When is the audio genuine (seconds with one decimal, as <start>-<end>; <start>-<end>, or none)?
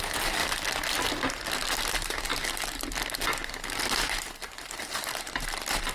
0.4-1.9; 2.3-4.6